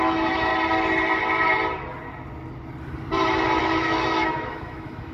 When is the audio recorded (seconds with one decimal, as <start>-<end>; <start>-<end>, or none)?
0.5-3.6